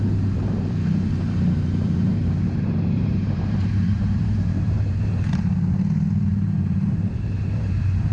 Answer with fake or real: fake